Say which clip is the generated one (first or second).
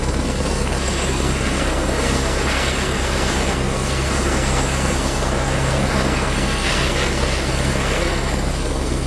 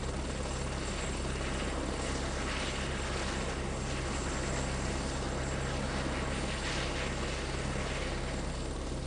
first